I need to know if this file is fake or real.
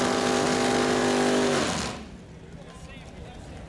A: real